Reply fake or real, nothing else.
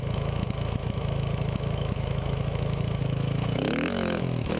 fake